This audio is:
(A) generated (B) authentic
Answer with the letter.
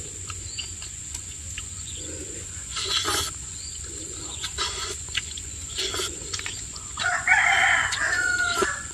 A